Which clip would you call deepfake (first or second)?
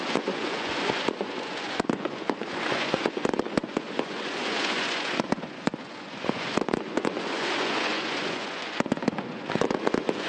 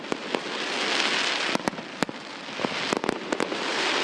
first